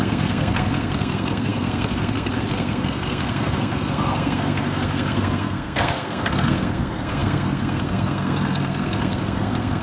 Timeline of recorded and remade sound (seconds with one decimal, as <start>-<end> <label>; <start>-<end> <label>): 0.0-9.8 remade